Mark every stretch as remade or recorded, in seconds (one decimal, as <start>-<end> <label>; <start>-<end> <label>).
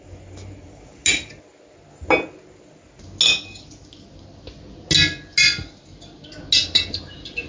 0.0-7.5 recorded